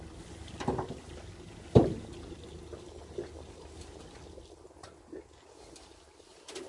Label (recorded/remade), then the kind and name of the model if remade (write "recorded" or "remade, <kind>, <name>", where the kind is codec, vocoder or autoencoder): recorded